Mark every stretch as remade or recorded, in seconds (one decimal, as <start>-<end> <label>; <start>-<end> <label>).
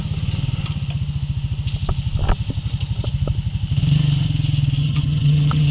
0.0-4.8 recorded; 4.8-5.7 remade